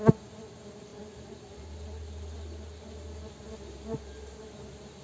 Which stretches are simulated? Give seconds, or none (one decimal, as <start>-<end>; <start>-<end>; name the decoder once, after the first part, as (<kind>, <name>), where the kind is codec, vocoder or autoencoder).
none